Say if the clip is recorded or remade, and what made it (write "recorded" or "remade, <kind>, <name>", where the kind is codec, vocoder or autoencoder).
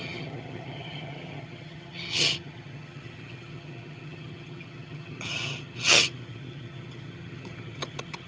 remade, vocoder, HiFi-GAN